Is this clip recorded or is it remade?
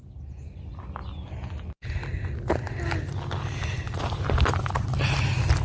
recorded